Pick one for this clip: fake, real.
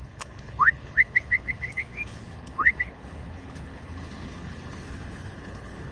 fake